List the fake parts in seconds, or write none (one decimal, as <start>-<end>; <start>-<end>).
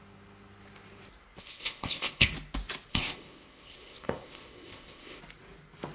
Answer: 1.4-2.3; 2.9-5.2